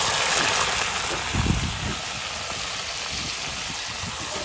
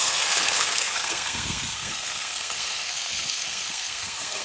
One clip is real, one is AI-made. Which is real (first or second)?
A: first